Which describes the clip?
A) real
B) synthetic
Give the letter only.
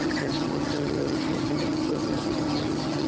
B